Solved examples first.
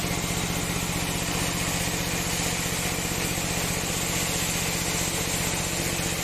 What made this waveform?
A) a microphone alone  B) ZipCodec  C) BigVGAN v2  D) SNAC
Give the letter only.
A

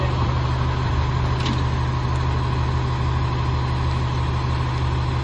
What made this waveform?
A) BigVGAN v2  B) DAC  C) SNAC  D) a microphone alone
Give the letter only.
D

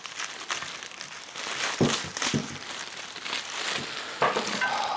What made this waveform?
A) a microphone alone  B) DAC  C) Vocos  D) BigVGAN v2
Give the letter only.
D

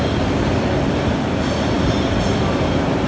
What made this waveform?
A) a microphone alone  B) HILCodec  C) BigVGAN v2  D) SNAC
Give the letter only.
A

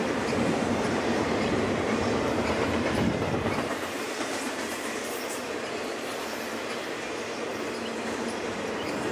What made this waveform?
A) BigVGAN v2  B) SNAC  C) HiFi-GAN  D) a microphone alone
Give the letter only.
A